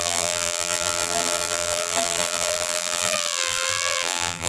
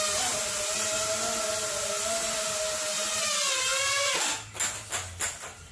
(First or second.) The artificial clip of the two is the first